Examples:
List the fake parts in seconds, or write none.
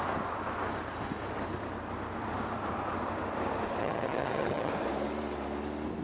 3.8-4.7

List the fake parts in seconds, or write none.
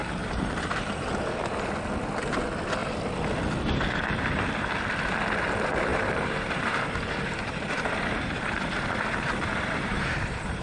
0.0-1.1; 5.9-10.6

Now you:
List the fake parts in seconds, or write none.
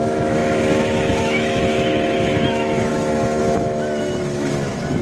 0.0-2.9; 3.4-5.0